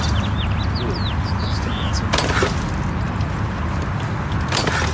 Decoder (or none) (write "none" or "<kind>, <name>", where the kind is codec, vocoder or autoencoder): none